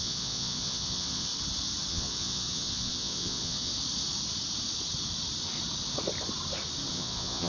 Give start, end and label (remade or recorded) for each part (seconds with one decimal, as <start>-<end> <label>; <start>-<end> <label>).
0.0-1.3 remade; 1.3-1.9 recorded; 1.9-3.7 remade; 3.7-6.9 recorded; 6.9-7.5 remade